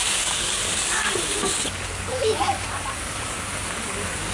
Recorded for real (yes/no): no